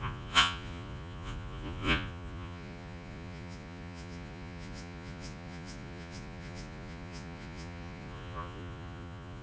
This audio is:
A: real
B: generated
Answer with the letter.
B